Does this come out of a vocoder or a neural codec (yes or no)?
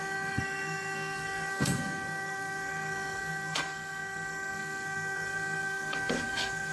yes